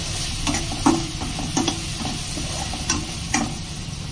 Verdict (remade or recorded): recorded